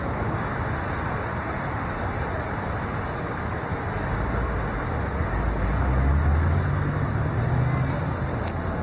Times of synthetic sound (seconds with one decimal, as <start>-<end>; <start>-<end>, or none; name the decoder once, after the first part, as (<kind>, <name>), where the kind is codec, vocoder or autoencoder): none